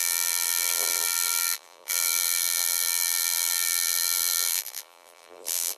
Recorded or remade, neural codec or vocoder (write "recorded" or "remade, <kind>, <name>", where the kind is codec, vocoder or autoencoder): remade, vocoder, BigVGAN v2